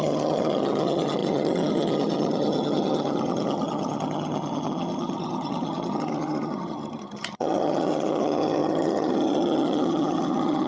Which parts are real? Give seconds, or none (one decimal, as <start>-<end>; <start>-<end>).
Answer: none